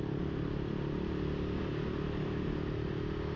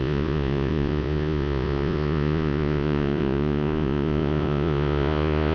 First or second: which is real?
first